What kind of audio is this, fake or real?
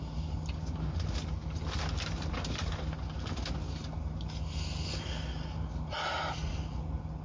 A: real